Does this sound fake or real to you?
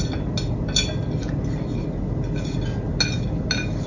real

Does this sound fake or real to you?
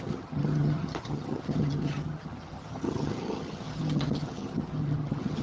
fake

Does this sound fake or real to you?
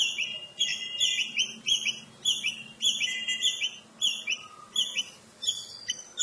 real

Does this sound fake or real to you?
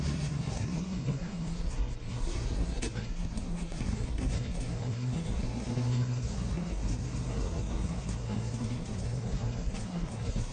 fake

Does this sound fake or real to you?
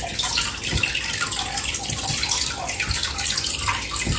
real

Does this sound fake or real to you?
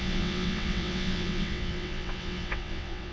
fake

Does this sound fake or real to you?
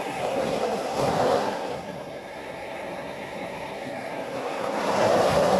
fake